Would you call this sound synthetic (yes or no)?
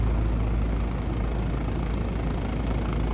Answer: no